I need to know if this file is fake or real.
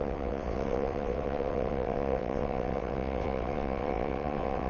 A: fake